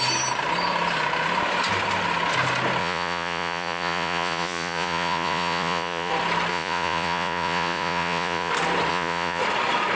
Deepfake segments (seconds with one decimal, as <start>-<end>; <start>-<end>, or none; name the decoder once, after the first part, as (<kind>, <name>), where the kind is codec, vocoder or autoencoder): 2.8-6.1 (vocoder, Vocos); 6.5-8.5; 8.9-9.4